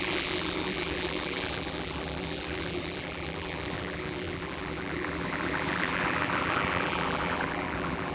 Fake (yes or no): yes